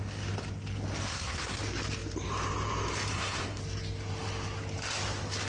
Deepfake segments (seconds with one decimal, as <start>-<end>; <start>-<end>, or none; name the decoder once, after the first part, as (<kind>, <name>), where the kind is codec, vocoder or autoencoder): 1.0-1.6 (codec, SNAC); 3.1-3.6